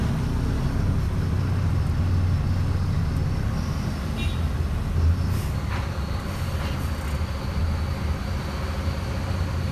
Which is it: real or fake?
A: real